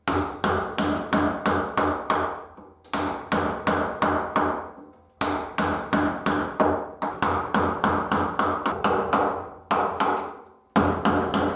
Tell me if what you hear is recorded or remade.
recorded